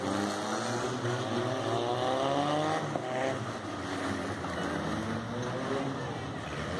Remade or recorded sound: recorded